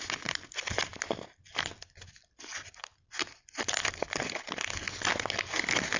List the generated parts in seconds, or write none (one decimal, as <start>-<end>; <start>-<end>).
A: none